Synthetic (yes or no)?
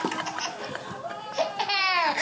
no